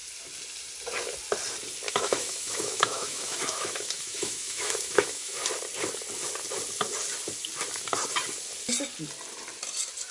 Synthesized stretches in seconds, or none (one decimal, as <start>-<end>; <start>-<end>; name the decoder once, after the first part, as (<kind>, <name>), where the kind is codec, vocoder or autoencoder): 1.9-5.4 (autoencoder, DAC-VAE)